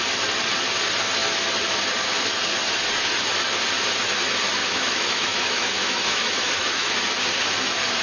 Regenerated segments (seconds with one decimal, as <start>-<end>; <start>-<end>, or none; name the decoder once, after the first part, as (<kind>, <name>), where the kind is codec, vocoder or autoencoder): 4.6-6.9 (autoencoder, DAC-VAE)